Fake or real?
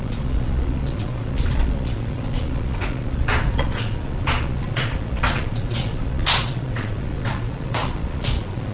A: fake